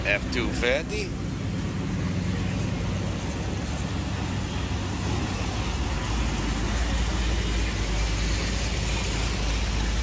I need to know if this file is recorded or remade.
recorded